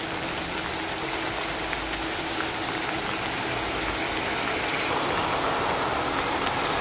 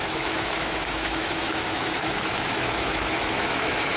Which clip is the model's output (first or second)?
second